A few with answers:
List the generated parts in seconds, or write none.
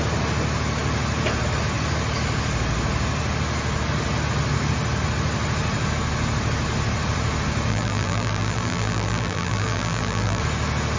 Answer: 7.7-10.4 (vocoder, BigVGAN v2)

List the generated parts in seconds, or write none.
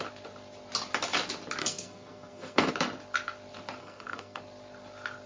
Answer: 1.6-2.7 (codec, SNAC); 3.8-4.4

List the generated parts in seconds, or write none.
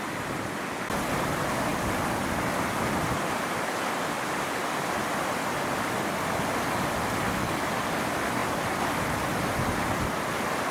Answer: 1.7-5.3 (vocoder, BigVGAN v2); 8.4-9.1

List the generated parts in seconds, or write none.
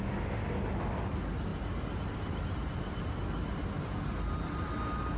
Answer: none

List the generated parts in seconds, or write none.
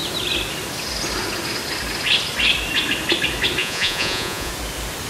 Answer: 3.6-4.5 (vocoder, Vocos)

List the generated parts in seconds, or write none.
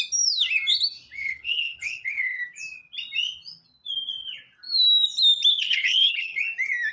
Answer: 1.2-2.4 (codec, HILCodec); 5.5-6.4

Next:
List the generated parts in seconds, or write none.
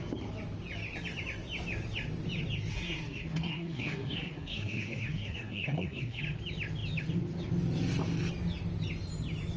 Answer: 2.7-6.2 (codec, SNAC)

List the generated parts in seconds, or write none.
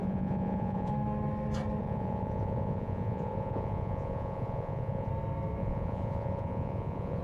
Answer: 0.0-0.9 (vocoder, Vocos); 1.8-5.1; 5.6-7.2